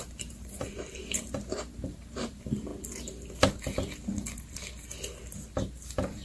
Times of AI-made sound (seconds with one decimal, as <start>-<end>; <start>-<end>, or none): 0.0-2.7; 5.7-6.2